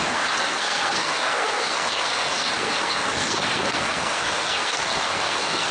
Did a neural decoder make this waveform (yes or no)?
yes